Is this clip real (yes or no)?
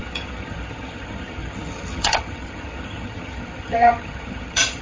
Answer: no